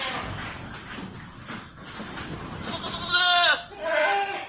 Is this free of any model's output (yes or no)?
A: yes